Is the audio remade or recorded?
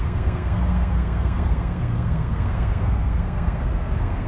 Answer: remade